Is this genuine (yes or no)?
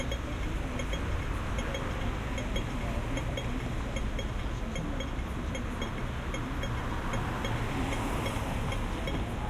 yes